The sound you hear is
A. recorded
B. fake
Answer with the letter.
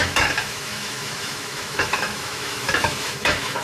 B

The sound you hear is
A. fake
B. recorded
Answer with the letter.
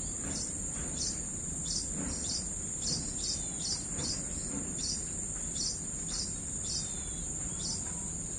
B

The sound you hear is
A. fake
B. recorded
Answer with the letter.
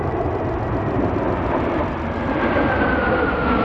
B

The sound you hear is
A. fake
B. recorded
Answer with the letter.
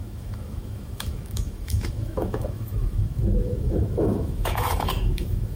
A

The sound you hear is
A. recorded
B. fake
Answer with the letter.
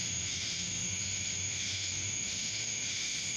B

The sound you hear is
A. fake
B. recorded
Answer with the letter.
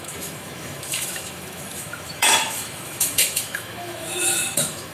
A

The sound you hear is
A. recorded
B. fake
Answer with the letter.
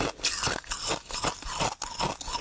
A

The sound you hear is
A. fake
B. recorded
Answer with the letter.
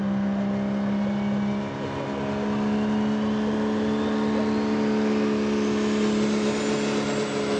B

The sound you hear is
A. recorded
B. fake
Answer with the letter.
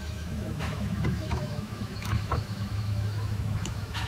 B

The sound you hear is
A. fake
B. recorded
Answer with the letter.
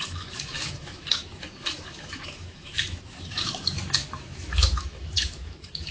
A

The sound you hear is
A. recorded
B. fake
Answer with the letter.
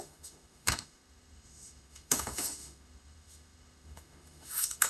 B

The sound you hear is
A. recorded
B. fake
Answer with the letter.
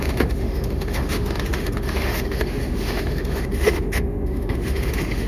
B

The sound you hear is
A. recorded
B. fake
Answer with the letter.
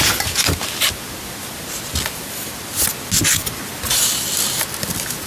A